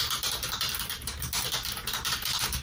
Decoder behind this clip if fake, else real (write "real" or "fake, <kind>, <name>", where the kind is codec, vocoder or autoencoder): fake, vocoder, BigVGAN v2